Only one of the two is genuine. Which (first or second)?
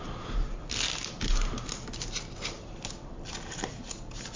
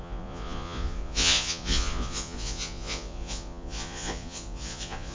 first